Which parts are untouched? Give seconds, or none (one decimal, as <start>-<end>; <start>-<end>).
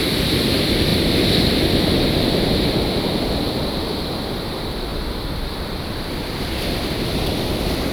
0.9-2.9